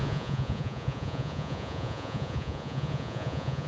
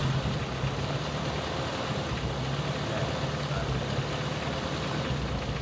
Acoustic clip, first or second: second